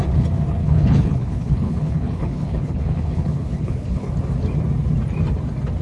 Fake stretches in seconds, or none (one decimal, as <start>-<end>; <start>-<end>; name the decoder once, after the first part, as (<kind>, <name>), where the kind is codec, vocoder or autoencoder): 0.6-4.1 (codec, HILCodec)